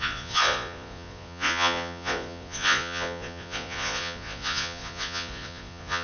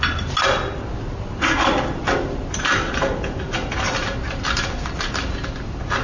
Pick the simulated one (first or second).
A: first